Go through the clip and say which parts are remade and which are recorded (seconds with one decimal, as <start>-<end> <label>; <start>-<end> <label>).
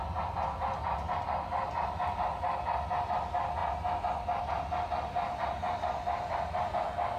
0.0-7.2 recorded